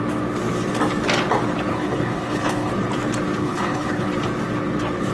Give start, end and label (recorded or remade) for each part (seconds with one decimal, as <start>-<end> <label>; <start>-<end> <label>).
0.0-1.7 recorded; 1.7-2.7 remade; 2.7-3.4 recorded; 3.4-4.1 remade; 4.1-5.1 recorded